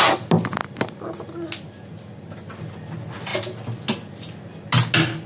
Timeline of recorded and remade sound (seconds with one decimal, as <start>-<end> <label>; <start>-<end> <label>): 0.0-5.3 recorded